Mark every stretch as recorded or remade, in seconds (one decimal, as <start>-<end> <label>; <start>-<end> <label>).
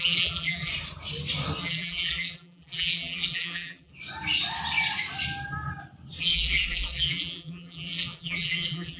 0.0-0.7 remade; 0.7-1.6 recorded; 1.6-3.9 remade; 3.9-6.2 recorded; 6.2-9.0 remade